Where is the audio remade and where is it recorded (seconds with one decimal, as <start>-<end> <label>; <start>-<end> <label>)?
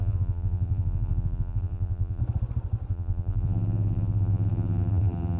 0.0-2.2 remade; 2.2-2.9 recorded; 2.9-5.4 remade